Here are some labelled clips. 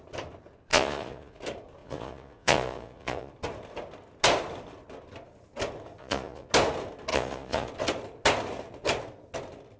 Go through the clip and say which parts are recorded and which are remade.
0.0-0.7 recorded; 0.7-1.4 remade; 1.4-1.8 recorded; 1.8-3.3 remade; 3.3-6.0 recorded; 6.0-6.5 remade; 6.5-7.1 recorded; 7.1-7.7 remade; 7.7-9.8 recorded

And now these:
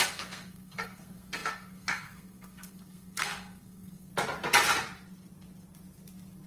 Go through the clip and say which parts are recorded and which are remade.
0.0-4.1 remade; 4.1-6.5 recorded

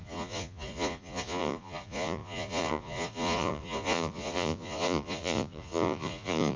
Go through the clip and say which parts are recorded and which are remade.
0.0-6.6 remade